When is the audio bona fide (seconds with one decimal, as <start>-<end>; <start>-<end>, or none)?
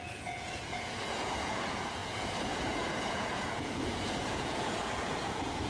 none